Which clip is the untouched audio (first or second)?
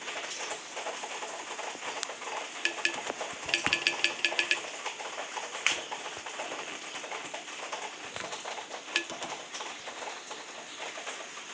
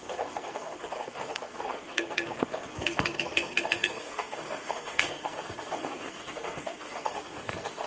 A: first